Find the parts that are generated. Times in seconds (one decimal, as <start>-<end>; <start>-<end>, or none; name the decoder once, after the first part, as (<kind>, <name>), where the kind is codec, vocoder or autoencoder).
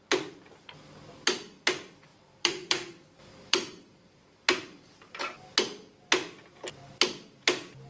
2.1-5.2 (vocoder, BigVGAN v2)